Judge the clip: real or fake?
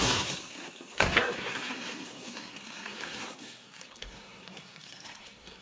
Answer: fake